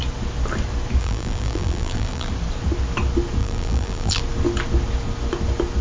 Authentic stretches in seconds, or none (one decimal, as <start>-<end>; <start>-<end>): 0.0-1.0; 2.3-3.4; 4.2-5.8